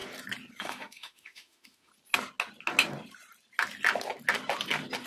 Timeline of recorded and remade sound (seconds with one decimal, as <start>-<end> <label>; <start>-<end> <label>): 0.0-0.6 recorded; 0.6-1.9 remade; 1.9-5.1 recorded